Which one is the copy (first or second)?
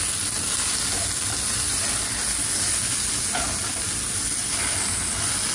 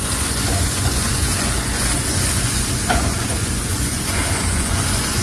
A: second